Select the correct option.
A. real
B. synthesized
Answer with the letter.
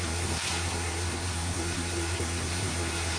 B